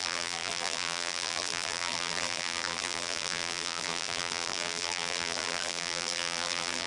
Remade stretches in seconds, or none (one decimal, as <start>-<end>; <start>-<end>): 0.0-6.9

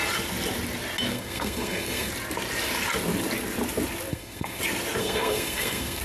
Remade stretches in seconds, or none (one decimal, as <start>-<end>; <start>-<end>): 1.1-2.1; 4.1-4.6; 5.0-6.0

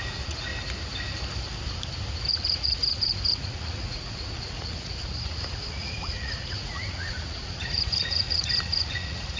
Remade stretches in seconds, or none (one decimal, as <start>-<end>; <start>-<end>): 0.0-0.5; 2.3-9.4